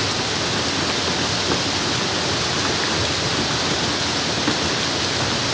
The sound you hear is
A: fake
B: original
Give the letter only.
B